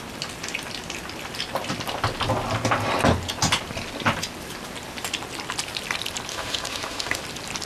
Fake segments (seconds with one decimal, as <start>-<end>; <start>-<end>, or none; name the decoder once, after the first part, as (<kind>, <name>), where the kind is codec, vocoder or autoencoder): 6.3-7.2 (autoencoder, DAC-VAE)